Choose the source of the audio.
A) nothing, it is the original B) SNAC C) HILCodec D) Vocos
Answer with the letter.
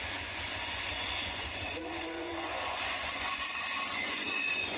D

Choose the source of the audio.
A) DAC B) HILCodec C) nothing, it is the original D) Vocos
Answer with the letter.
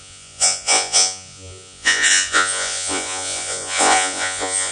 D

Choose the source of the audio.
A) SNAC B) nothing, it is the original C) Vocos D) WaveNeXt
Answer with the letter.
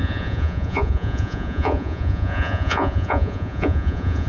C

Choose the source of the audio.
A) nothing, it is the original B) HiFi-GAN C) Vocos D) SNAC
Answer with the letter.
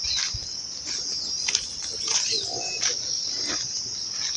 A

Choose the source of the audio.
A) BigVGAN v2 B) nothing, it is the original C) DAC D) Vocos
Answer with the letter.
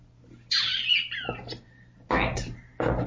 B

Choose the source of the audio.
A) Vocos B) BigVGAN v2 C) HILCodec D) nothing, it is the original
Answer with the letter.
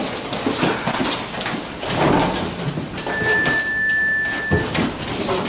D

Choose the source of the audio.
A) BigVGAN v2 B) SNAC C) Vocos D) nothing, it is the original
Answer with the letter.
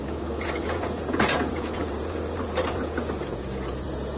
C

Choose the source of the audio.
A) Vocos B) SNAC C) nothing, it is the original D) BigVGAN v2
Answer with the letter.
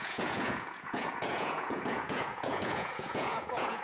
A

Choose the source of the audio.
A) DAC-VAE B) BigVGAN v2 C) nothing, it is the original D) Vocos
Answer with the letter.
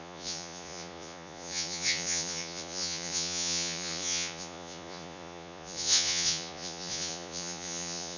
D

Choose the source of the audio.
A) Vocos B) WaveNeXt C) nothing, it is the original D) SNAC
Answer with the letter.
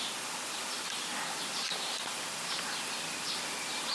C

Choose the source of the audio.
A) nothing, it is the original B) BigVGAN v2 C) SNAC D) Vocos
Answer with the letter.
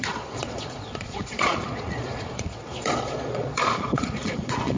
D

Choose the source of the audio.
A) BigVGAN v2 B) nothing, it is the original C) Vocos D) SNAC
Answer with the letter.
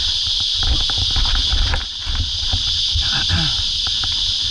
B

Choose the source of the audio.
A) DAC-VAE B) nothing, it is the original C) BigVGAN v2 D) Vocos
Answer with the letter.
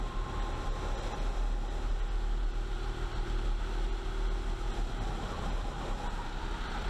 B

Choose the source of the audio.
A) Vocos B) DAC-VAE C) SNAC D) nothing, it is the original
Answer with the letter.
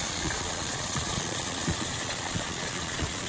A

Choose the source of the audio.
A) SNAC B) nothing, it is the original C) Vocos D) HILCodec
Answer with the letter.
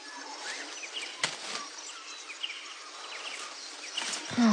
B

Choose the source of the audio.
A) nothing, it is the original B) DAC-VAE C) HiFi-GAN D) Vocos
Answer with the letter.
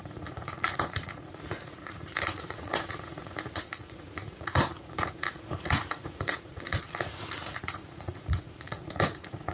D